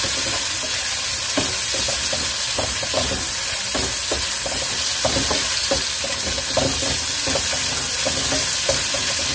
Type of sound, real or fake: real